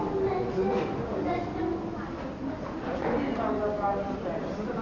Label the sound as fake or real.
real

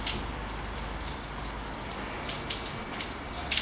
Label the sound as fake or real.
real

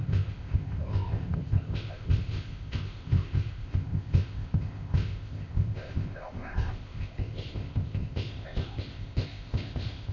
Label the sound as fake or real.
fake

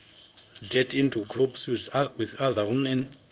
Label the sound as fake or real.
fake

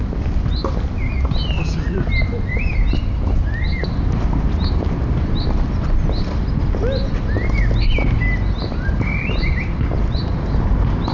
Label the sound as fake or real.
real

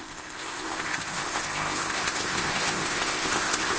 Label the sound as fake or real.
fake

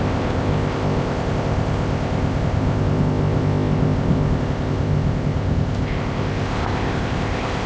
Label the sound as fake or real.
fake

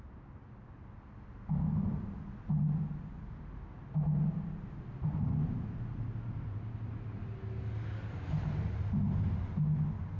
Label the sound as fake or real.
real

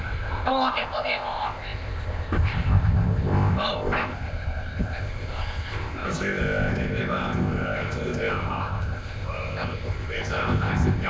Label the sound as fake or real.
fake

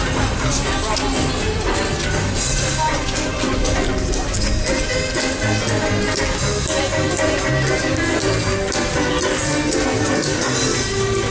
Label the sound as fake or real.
real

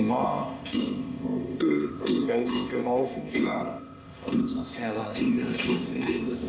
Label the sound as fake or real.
fake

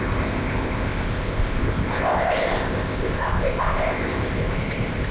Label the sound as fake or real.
fake